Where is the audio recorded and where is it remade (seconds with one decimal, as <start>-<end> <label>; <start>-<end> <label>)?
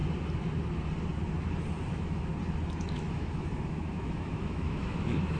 0.0-1.9 recorded; 1.9-2.3 remade; 2.3-2.8 recorded; 2.8-5.4 remade